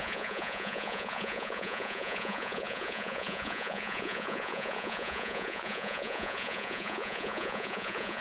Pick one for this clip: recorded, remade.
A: remade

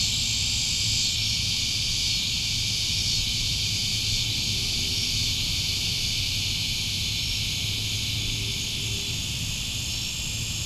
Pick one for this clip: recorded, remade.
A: recorded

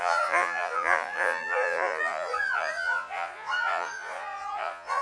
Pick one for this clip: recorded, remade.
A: remade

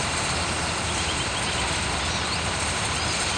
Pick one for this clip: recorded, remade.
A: recorded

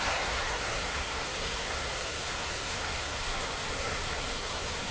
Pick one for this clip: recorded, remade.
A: remade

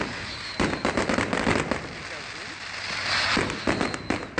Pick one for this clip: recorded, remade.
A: recorded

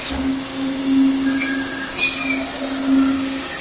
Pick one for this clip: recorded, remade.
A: recorded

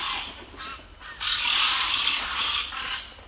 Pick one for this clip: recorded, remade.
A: recorded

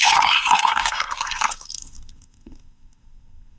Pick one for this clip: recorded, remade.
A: remade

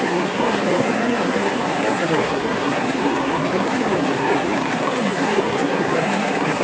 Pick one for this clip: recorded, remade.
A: remade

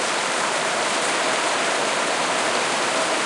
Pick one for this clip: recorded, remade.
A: remade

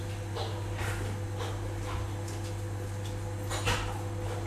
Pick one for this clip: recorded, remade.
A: recorded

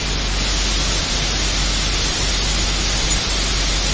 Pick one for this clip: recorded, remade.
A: recorded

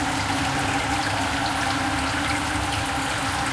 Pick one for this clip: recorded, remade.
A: recorded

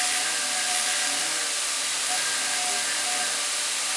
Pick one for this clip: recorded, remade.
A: recorded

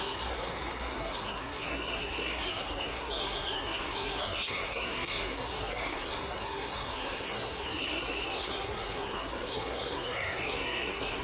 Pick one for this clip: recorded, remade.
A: remade